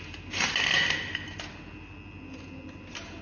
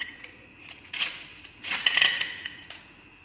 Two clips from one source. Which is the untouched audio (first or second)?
first